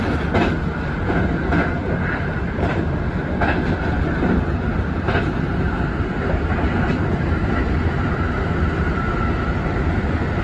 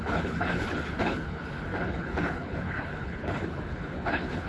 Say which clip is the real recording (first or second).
first